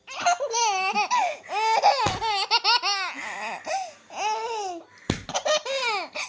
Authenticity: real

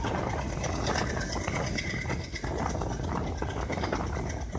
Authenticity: real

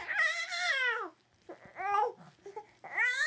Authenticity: real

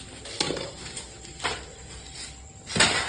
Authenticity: real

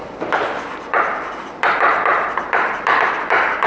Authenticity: fake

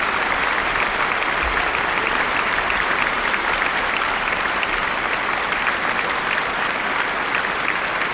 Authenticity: real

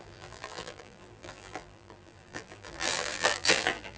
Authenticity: fake